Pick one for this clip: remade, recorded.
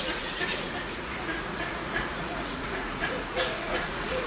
remade